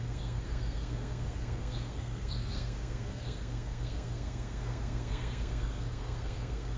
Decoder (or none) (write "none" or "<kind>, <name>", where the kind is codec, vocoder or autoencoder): codec, SNAC